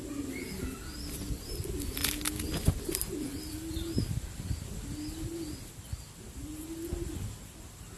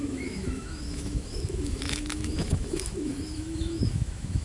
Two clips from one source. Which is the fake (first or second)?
second